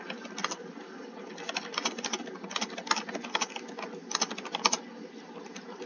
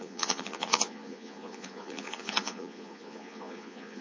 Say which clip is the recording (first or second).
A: first